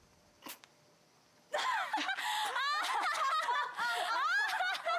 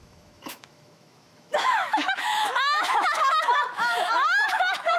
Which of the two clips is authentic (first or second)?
first